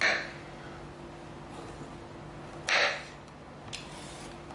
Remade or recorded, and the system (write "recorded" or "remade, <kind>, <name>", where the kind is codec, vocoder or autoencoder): recorded